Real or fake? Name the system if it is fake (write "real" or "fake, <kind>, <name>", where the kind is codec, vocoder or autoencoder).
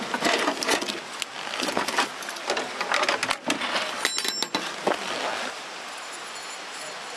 real